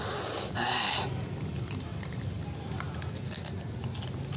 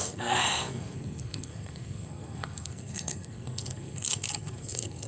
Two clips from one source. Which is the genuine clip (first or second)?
first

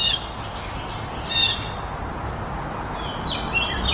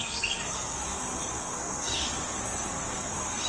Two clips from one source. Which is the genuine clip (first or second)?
first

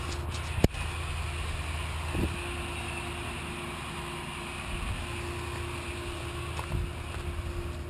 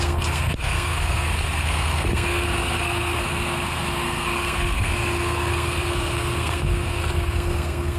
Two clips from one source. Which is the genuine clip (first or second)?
first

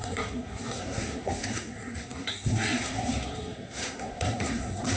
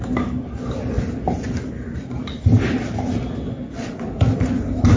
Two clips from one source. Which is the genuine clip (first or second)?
second